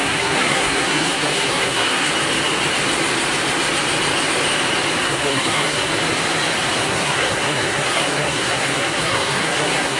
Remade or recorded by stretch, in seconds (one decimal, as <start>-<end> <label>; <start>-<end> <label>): 0.0-2.1 remade; 2.1-5.0 recorded; 5.0-5.9 remade; 5.9-6.8 recorded; 6.8-10.0 remade